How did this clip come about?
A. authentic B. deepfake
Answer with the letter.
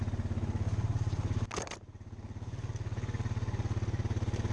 A